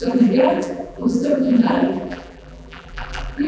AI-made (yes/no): yes